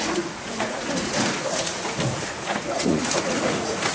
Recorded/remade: remade